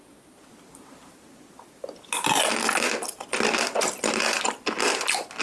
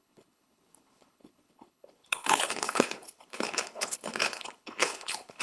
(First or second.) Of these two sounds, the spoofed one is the second